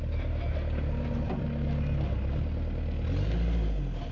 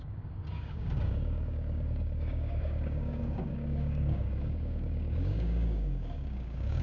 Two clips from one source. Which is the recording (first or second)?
first